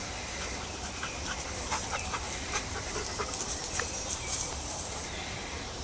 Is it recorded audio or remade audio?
remade